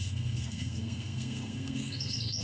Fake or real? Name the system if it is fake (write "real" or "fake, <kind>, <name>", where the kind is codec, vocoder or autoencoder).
fake, codec, SNAC